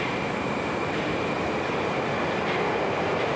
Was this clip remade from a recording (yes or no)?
no